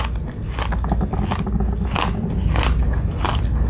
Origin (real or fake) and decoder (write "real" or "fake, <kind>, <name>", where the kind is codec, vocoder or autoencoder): real